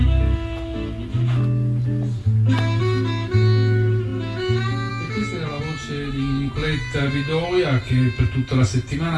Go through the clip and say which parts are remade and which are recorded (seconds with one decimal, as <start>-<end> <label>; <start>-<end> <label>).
0.0-9.2 recorded